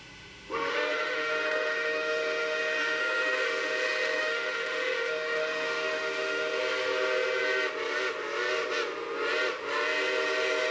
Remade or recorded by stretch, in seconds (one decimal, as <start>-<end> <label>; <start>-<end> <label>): 0.0-6.6 remade; 6.6-10.7 recorded